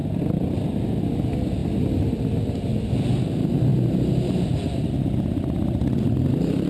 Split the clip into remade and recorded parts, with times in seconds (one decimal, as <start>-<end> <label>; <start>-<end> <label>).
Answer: 0.0-0.9 recorded; 0.9-3.7 remade; 3.7-4.9 recorded; 4.9-6.7 remade